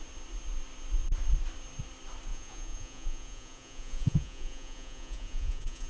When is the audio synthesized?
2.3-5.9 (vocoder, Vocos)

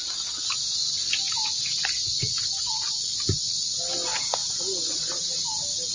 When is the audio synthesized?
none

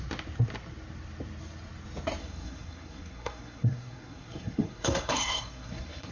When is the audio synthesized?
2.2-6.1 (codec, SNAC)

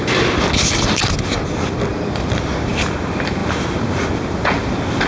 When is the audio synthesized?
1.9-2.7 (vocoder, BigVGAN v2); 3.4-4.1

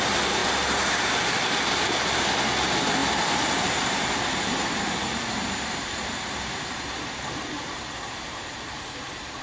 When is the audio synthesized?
3.0-7.4 (vocoder, BigVGAN v2)

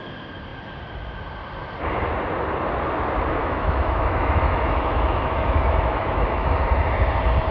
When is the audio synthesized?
3.4-6.7 (autoencoder, DAC-VAE)